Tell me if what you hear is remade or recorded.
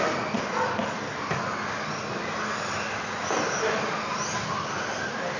recorded